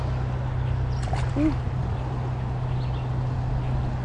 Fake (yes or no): no